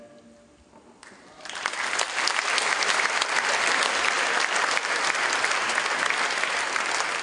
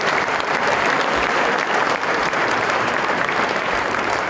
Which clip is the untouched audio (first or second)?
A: first